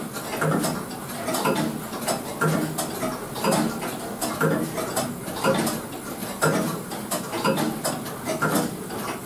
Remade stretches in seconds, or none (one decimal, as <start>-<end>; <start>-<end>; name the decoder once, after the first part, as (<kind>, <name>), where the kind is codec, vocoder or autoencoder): 6.2-7.1 (vocoder, BigVGAN v2)